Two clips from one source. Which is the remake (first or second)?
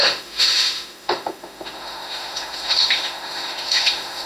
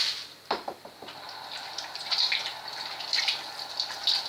first